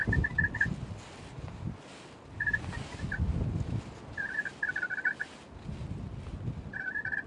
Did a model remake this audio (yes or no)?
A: no